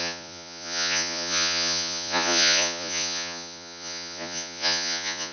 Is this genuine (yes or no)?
no